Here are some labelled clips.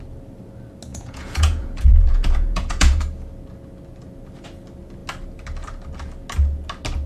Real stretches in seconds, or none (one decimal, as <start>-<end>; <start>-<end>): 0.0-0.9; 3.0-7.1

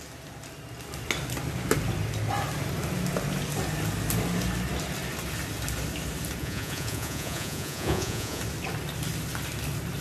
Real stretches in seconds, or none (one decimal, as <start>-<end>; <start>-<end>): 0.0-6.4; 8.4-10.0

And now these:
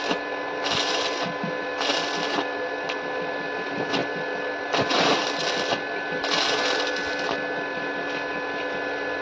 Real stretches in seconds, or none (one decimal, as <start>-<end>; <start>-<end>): 0.0-9.2